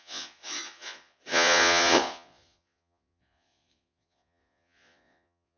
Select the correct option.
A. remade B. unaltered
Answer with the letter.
A